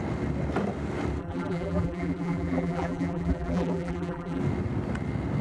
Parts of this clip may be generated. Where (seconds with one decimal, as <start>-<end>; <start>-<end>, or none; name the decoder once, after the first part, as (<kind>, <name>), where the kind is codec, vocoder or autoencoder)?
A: 1.2-4.4 (vocoder, BigVGAN v2)